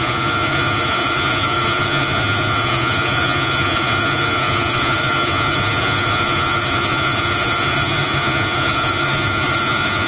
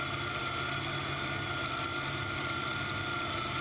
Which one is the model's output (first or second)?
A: first